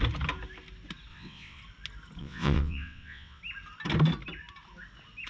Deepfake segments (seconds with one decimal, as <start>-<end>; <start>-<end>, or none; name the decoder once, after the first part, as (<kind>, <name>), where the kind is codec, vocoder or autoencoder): 1.1-1.6 (vocoder, WaveNeXt); 2.2-3.4